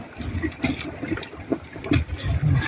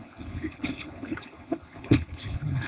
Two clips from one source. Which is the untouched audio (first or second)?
first